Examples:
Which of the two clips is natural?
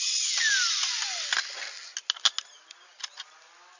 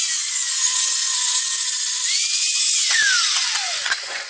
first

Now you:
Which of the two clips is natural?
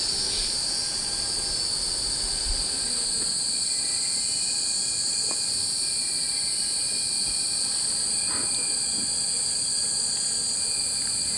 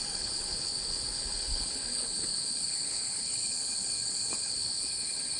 first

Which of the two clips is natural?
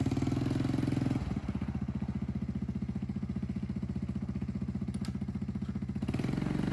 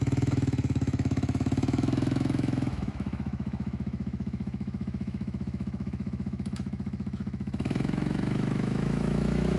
first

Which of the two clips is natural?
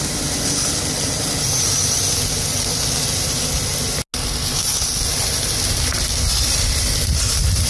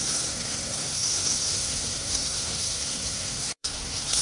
first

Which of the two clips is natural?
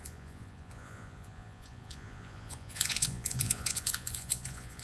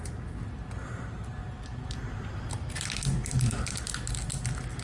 second